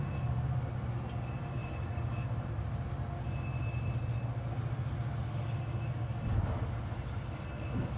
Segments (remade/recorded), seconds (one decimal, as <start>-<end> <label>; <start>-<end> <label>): 0.0-8.0 recorded